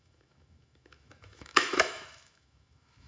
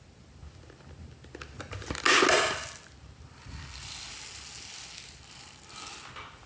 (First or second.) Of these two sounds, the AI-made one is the first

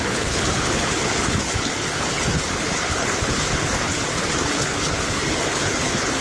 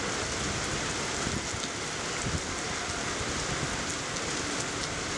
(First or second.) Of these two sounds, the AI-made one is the first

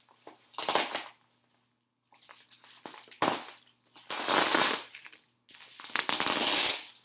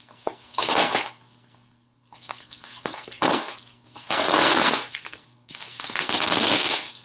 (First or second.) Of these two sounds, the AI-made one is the second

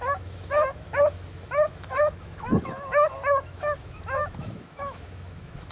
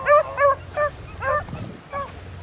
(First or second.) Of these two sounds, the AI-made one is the first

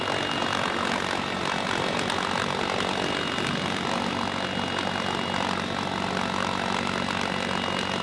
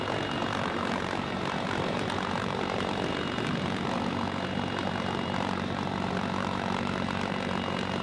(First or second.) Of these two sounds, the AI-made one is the second